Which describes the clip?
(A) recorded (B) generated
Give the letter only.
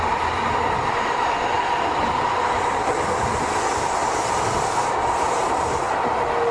A